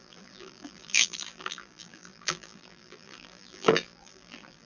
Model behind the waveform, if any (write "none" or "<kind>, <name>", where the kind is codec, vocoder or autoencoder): vocoder, BigVGAN v2